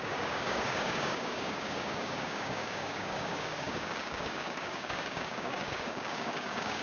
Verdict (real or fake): fake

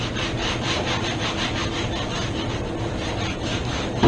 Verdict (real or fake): fake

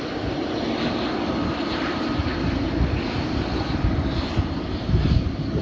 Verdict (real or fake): real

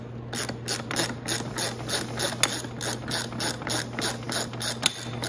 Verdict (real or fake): real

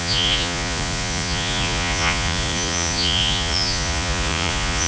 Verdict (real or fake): fake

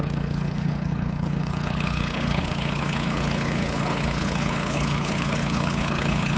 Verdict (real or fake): fake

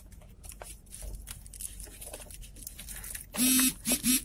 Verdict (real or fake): real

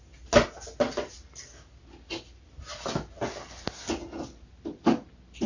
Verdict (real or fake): real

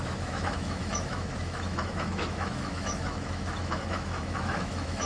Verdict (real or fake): fake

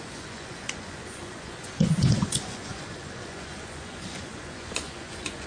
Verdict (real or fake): fake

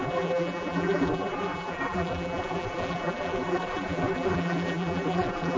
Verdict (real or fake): fake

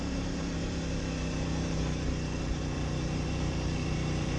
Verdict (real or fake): fake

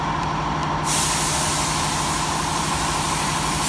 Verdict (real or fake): real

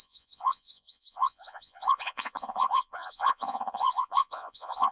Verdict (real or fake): fake